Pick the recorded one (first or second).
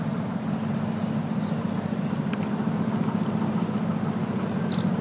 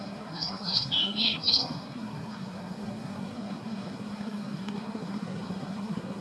first